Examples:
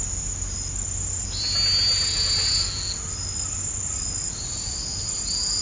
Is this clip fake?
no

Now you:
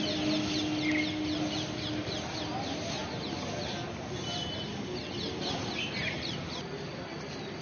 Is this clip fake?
no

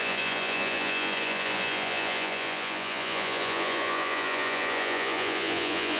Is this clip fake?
yes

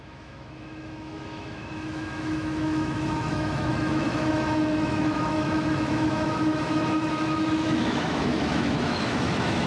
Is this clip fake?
yes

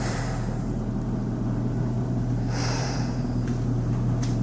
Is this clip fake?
yes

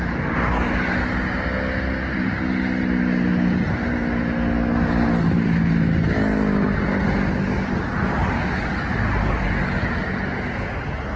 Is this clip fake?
no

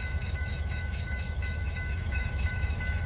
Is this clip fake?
yes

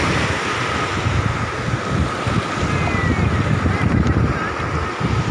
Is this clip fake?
no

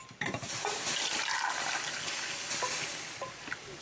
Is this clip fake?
no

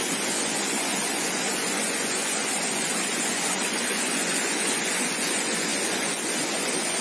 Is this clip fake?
yes